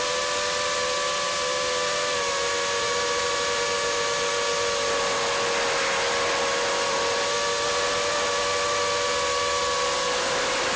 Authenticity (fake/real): real